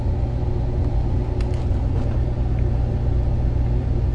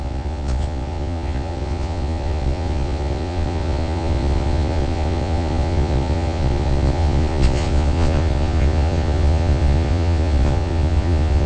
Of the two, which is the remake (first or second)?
second